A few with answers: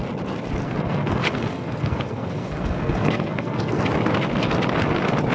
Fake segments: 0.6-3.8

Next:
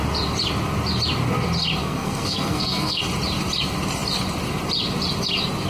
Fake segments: 1.8-3.0

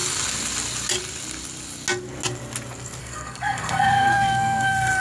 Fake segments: 3.0-5.0

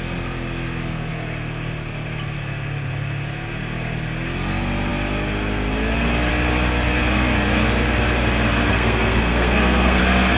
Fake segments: 8.7-10.0

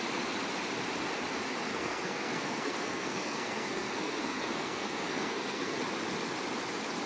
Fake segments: 1.7-5.8